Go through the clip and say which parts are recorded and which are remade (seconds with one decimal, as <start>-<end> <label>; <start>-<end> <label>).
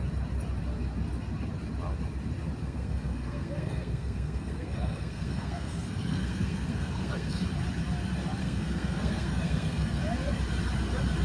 0.0-2.6 recorded; 2.6-7.4 remade; 7.4-8.4 recorded; 8.4-10.0 remade; 10.0-11.2 recorded